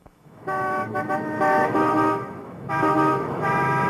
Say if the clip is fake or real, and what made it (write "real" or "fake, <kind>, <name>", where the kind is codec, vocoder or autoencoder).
fake, autoencoder, DAC-VAE